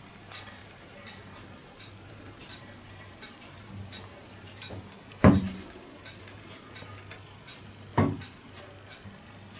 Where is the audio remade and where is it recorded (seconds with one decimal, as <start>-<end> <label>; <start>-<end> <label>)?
0.0-0.6 recorded; 0.6-4.6 remade; 4.6-5.2 recorded; 5.2-6.6 remade; 6.6-7.9 recorded; 7.9-8.6 remade; 8.6-9.6 recorded